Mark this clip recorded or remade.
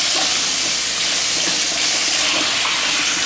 recorded